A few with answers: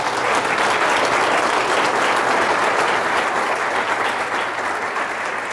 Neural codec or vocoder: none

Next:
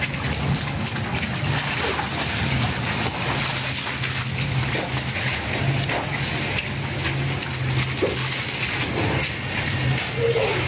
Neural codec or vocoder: none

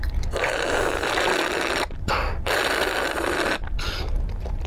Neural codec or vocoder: none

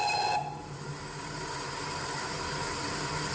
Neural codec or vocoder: none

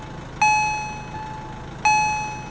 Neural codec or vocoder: none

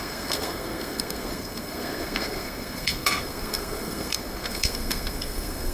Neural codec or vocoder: codec, SNAC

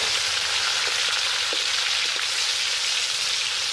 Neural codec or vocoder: none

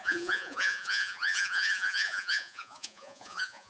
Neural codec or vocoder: vocoder, Vocos